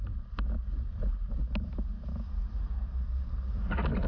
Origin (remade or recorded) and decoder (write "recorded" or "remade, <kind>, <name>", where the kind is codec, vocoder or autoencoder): recorded